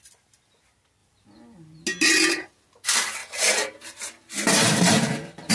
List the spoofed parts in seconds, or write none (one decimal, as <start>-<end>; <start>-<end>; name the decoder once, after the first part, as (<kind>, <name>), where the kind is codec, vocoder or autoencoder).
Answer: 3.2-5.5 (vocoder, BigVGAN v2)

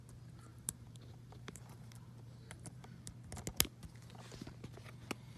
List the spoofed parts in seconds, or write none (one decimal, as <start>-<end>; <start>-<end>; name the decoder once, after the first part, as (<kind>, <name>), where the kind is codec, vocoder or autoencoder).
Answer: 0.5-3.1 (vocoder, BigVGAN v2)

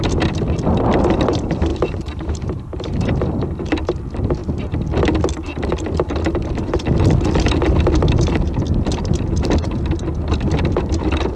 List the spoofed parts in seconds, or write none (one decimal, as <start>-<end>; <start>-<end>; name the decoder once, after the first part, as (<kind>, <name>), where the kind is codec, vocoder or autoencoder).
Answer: 1.7-3.1 (vocoder, BigVGAN v2)

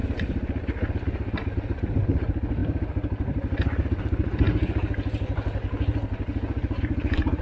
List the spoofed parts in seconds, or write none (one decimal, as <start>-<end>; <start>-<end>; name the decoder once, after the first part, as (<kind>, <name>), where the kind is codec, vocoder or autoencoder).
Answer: 1.5-2.6 (vocoder, BigVGAN v2); 6.8-7.4